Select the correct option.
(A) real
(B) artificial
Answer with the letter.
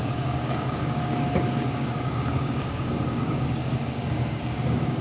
B